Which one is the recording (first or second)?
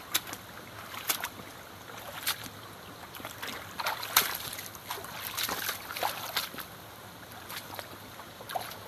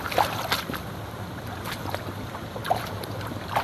first